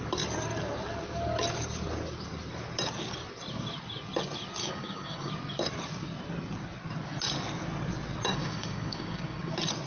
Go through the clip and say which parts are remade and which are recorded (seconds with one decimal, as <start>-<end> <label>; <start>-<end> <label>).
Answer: 0.0-4.6 recorded; 4.6-5.3 remade; 5.3-8.3 recorded; 8.3-9.5 remade; 9.5-9.9 recorded